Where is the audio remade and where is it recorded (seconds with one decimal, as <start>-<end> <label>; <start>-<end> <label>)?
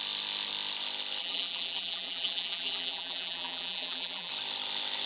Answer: 0.0-1.2 recorded; 1.2-4.3 remade; 4.3-5.1 recorded